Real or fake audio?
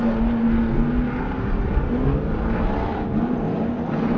real